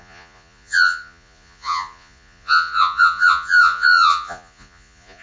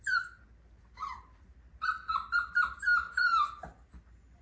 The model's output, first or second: first